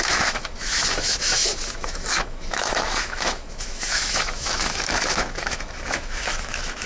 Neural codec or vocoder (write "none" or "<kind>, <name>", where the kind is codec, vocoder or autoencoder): autoencoder, DAC-VAE